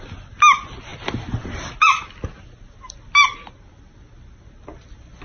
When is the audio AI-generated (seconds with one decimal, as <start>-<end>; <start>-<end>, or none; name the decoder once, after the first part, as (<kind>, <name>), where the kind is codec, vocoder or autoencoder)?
none